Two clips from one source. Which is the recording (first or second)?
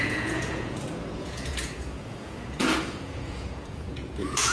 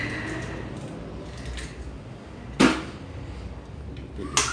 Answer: second